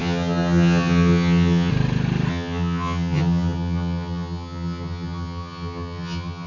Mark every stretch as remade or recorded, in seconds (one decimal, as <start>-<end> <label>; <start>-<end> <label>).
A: 0.0-1.7 remade; 1.7-2.3 recorded; 2.3-6.5 remade